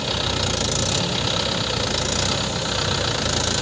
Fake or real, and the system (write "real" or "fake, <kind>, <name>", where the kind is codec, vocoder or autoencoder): real